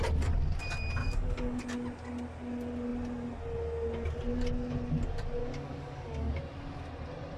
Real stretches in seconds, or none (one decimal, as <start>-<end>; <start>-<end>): 0.0-1.0; 1.6-5.4; 6.3-7.4